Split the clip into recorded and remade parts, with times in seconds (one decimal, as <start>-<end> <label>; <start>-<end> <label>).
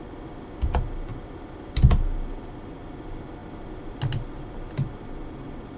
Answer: 0.0-5.8 recorded